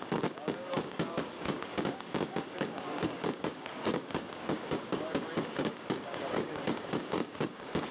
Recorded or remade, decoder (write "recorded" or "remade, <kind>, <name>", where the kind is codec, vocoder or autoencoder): remade, codec, DAC